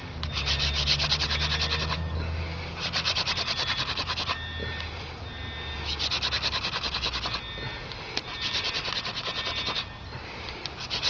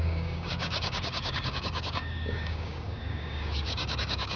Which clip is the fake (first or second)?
second